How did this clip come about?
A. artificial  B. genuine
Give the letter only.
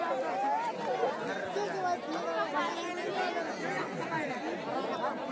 B